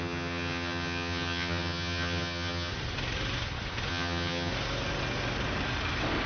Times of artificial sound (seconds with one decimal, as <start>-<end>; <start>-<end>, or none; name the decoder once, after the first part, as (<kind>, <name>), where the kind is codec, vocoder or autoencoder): 0.0-2.7 (vocoder, HiFi-GAN); 3.9-4.5